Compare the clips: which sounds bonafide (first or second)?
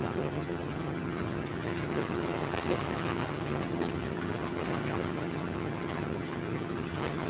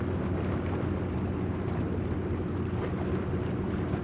second